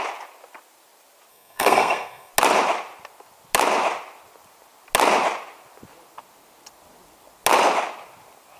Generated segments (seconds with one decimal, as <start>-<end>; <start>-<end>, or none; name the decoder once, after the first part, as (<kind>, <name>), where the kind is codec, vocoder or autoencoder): 1.3-2.3 (codec, SNAC)